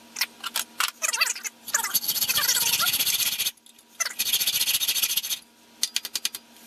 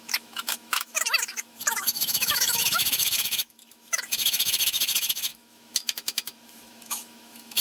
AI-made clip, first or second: second